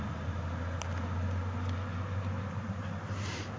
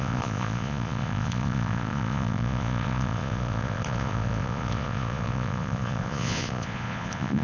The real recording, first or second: first